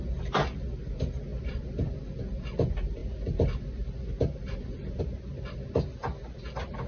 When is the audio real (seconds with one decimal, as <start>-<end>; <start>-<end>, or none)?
0.0-6.9